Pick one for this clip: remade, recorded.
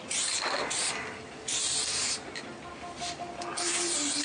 recorded